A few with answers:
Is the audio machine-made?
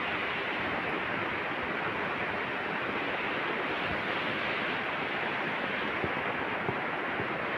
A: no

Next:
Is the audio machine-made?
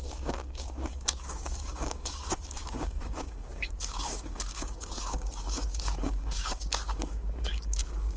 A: yes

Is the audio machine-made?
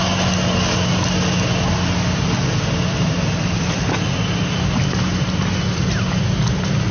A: no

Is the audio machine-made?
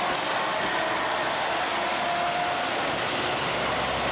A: no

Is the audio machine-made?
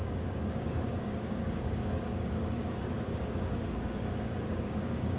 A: yes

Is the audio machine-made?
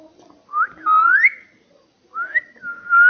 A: no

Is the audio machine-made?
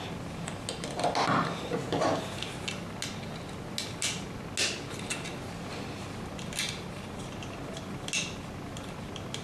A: no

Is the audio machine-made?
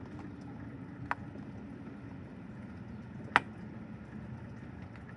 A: no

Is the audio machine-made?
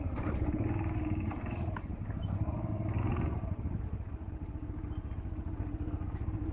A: no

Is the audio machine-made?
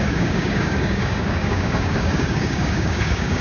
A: yes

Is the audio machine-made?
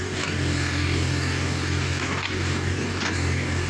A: yes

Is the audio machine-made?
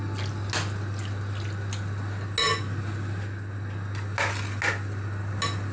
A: no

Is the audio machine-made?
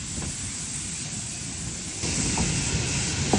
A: no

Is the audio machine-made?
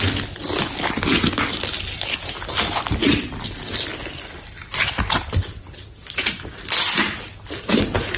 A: no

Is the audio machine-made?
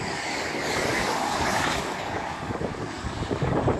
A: yes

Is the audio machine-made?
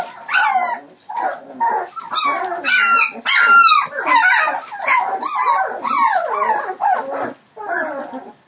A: no